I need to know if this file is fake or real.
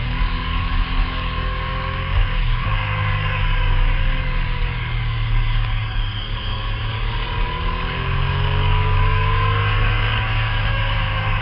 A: fake